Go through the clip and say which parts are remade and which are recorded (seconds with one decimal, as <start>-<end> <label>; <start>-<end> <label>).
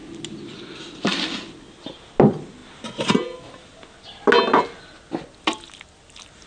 0.0-6.5 recorded